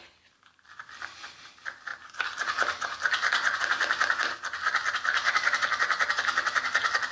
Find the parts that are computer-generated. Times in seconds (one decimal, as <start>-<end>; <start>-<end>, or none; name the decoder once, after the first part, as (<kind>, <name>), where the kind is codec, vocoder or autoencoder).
none

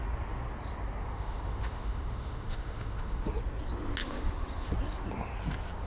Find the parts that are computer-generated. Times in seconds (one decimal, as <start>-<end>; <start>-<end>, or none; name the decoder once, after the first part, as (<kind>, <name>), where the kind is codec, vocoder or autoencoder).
1.1-3.3 (autoencoder, DAC-VAE); 4.0-4.7